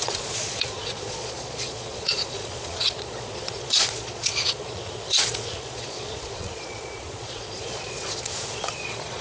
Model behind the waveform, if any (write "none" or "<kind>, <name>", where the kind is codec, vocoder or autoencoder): vocoder, Vocos